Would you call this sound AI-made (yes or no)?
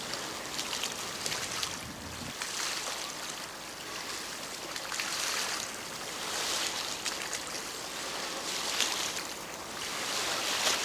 no